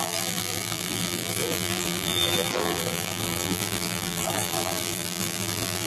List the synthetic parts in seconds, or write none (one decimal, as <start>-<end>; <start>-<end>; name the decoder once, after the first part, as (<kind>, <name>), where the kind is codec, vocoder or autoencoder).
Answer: 0.0-5.9 (vocoder, BigVGAN v2)